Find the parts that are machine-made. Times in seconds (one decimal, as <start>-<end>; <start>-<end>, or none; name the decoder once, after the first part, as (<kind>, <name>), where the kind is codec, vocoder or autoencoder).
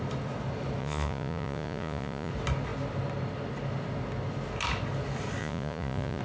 0.8-2.3 (vocoder, Vocos); 5.4-6.2